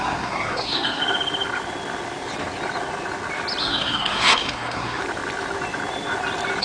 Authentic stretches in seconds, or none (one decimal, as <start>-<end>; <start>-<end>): 1.0-3.6; 5.0-6.6